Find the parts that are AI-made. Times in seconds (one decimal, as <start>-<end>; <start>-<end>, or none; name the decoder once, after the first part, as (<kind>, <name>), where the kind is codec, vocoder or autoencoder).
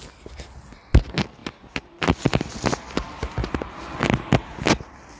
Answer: none